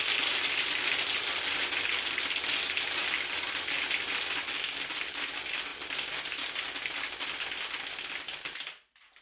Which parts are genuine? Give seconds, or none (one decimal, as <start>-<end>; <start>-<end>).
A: 0.0-9.2